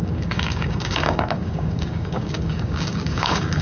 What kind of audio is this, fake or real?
fake